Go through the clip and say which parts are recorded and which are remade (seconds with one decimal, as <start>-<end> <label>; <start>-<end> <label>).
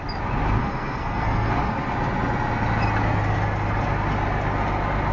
0.0-0.6 recorded; 0.6-1.5 remade; 1.5-5.1 recorded